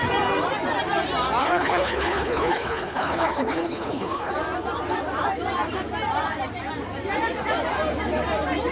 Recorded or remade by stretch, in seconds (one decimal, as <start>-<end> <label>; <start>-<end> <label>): 0.0-1.4 recorded; 1.4-4.3 remade; 4.3-8.7 recorded